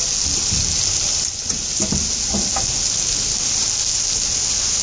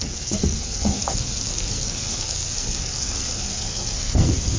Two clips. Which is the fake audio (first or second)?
second